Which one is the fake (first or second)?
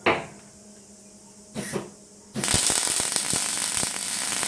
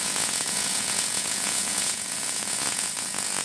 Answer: second